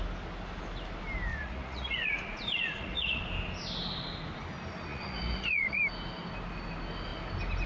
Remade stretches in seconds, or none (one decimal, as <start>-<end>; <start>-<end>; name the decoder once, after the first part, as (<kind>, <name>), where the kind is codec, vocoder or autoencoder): 1.3-3.2 (vocoder, Vocos); 4.9-5.8